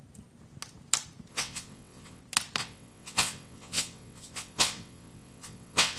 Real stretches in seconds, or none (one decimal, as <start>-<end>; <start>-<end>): 0.0-1.3; 2.2-2.6